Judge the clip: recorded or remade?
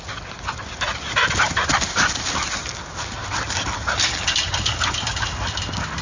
recorded